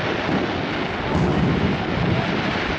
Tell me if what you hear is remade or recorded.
recorded